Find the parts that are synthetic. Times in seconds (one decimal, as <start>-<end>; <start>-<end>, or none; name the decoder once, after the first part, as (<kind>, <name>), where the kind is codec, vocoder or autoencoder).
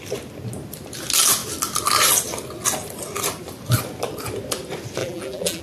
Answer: 5.0-5.6 (vocoder, BigVGAN v2)